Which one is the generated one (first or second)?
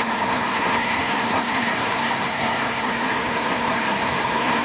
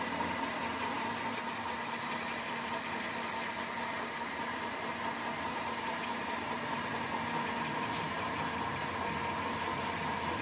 first